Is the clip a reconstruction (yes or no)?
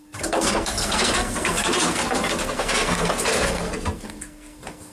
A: yes